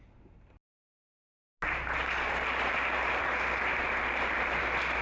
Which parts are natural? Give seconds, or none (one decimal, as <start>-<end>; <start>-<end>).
0.0-5.0